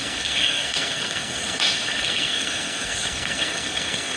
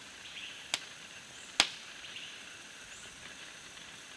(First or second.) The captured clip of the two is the second